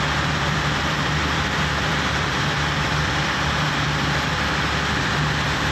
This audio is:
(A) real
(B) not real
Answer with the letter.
B